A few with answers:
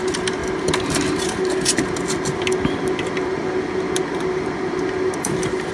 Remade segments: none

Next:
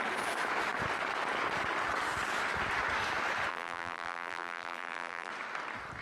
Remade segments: 3.5-5.3 (vocoder, BigVGAN v2)

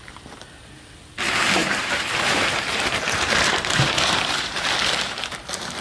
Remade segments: 1.6-4.7 (vocoder, BigVGAN v2)

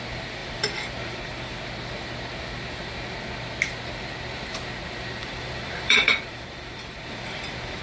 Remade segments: 0.4-1.6 (vocoder, BigVGAN v2); 5.2-7.8